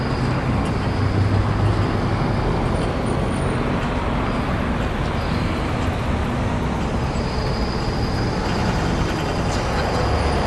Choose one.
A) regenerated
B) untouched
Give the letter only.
B